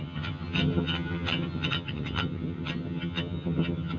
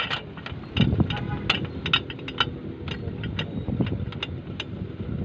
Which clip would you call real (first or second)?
second